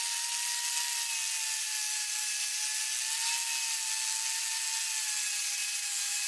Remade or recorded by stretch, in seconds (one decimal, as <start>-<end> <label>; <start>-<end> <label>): 0.0-6.3 recorded